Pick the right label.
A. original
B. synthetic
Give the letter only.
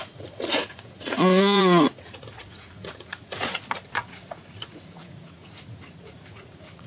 B